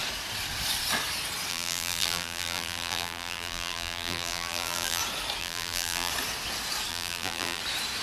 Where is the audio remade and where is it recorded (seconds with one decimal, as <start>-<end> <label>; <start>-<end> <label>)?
0.0-1.5 recorded; 1.5-5.0 remade; 5.0-5.4 recorded; 5.4-6.1 remade; 6.1-6.9 recorded; 6.9-7.6 remade; 7.6-8.0 recorded